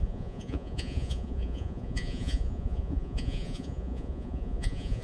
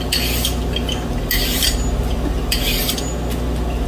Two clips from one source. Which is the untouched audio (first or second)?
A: second